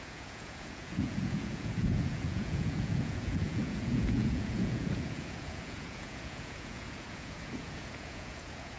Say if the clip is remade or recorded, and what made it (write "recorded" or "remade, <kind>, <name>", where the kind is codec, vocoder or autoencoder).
remade, vocoder, Vocos